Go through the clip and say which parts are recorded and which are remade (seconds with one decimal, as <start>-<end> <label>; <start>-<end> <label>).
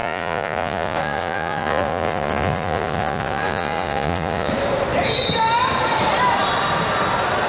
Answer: 0.0-4.5 remade; 4.5-7.5 recorded